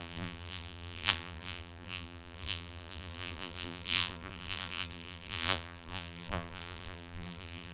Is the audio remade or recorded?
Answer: remade